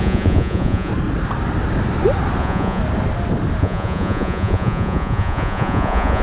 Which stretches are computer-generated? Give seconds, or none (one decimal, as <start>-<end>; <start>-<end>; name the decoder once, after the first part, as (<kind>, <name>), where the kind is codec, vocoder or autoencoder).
0.0-0.9 (vocoder, Vocos); 2.4-2.8; 3.6-6.2

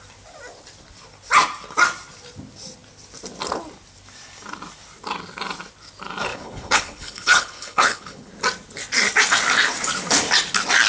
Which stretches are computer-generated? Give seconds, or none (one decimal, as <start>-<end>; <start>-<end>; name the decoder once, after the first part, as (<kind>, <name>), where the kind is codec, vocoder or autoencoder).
6.3-8.3 (codec, HILCodec)

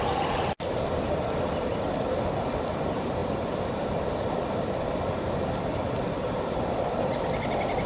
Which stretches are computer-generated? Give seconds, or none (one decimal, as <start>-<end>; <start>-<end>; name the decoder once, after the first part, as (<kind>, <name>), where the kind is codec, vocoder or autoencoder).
none

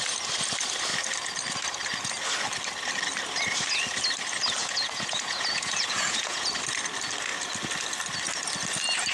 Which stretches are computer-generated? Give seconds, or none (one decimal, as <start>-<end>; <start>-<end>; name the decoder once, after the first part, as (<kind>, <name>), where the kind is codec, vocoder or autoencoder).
4.6-6.5 (vocoder, Vocos)

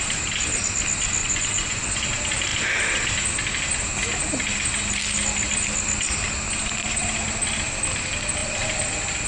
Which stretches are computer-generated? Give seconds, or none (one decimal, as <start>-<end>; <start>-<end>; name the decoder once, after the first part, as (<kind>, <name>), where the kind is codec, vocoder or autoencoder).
1.2-1.9 (vocoder, Vocos)

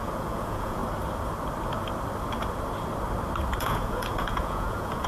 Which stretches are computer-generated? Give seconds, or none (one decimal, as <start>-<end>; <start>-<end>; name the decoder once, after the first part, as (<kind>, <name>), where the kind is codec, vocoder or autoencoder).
0.0-0.8 (vocoder, Vocos); 3.6-5.1